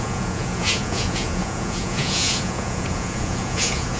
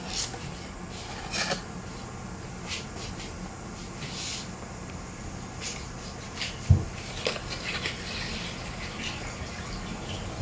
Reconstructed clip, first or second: first